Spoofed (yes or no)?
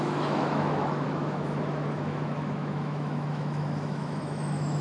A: yes